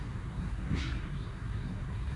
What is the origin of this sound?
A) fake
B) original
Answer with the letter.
A